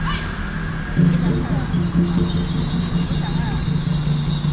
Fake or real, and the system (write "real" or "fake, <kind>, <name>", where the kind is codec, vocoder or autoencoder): real